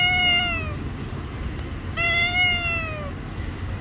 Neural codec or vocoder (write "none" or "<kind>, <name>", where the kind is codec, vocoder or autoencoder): none